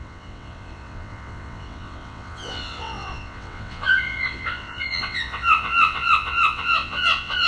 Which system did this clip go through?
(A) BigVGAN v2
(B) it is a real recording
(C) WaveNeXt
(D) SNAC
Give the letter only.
C